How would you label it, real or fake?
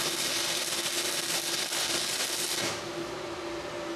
real